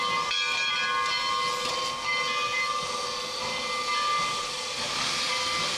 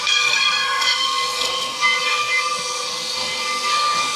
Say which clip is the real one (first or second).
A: first